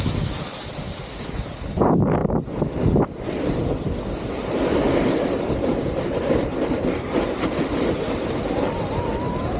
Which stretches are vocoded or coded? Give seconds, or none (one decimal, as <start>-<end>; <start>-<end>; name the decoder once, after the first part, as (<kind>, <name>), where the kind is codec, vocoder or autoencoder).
none